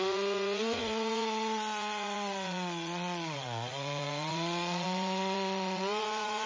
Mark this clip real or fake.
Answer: fake